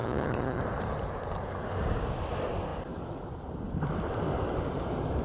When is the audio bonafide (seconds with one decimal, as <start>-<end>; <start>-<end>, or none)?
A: 0.6-5.2